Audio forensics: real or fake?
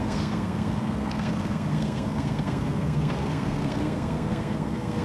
fake